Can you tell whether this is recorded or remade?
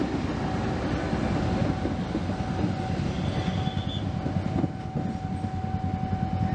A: recorded